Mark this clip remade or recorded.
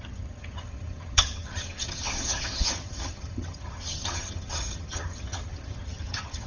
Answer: remade